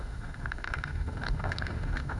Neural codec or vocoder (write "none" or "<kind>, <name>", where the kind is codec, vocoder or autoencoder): autoencoder, DAC-VAE